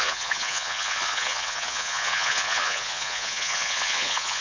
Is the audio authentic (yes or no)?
no